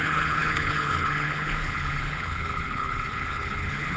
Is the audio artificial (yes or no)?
yes